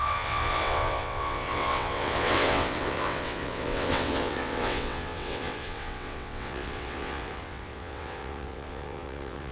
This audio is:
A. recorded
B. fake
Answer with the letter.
B